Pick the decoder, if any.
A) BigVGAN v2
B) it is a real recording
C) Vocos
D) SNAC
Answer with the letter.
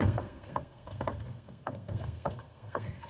D